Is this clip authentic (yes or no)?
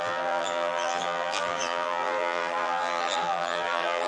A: no